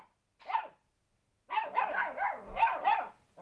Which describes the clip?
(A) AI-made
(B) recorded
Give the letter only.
B